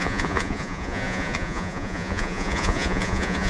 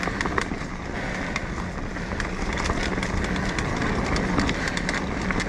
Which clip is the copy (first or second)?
first